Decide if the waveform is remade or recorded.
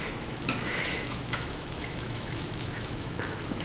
remade